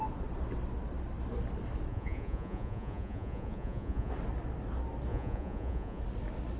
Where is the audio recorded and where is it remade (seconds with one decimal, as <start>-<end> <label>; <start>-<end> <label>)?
0.0-1.9 recorded; 1.9-4.1 remade; 4.1-5.1 recorded; 5.1-6.0 remade; 6.0-6.6 recorded